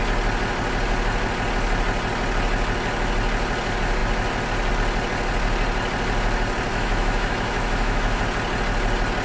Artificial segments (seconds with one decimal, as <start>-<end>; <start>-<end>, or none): 6.7-8.2